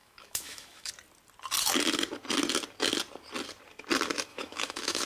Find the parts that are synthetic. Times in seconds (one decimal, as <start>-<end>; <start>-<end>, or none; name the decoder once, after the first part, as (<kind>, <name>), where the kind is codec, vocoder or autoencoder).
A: 0.0-0.9 (autoencoder, DAC-VAE); 4.3-5.1